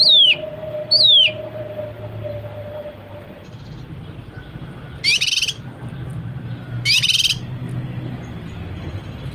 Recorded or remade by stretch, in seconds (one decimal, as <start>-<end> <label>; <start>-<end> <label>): 0.0-9.3 recorded